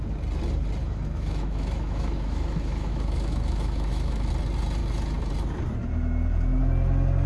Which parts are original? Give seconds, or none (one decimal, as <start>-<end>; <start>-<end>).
0.0-0.8; 4.3-7.3